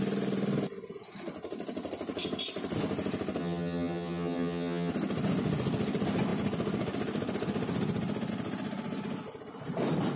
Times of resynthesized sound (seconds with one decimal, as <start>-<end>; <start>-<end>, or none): 3.4-4.9